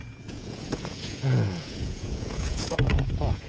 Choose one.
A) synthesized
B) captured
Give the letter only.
A